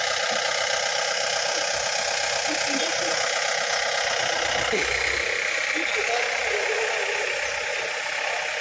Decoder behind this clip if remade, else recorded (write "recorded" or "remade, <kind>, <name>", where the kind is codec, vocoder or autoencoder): recorded